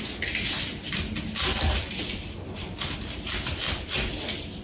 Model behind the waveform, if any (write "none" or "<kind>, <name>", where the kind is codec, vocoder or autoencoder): none